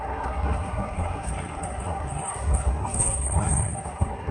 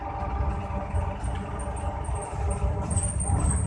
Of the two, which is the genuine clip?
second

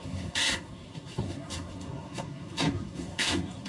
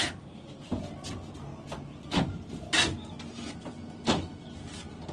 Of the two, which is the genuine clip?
second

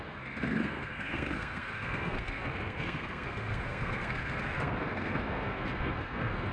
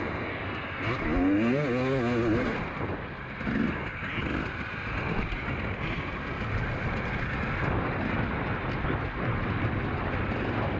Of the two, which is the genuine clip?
second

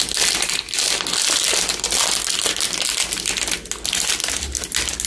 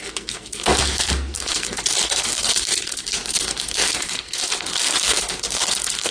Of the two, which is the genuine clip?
first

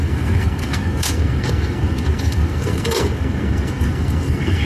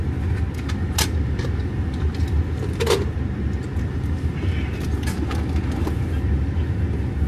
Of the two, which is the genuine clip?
second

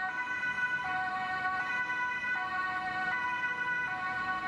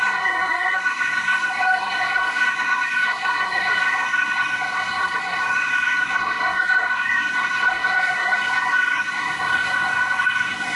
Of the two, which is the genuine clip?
first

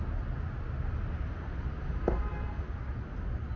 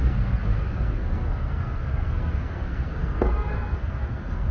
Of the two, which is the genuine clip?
first